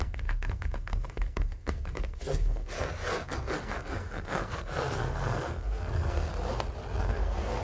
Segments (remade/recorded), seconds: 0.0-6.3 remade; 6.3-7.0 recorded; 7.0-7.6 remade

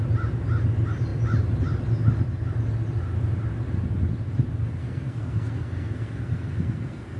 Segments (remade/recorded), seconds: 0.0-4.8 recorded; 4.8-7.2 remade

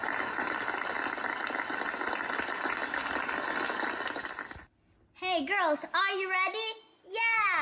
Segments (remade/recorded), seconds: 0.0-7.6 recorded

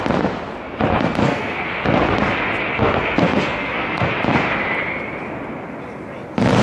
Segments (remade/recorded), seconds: 0.0-1.2 recorded; 1.2-1.8 remade; 1.8-2.7 recorded; 2.7-4.1 remade; 4.1-6.6 recorded

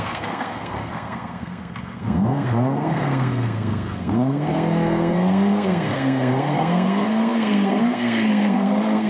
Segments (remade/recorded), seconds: 0.0-9.1 remade

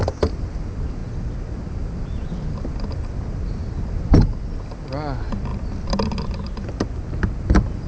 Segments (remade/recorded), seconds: 0.0-7.9 recorded